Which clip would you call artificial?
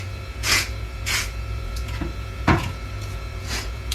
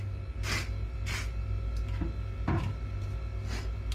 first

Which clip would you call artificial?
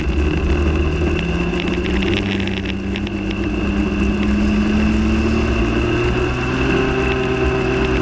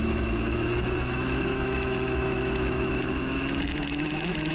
second